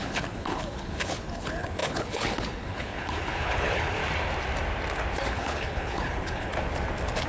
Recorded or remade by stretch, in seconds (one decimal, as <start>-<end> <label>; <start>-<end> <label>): 0.0-4.0 remade; 4.0-5.3 recorded; 5.3-6.5 remade; 6.5-7.3 recorded